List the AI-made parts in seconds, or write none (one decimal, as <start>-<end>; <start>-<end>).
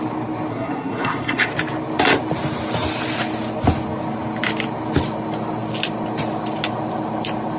0.5-1.5